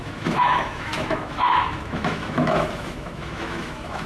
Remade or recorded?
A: remade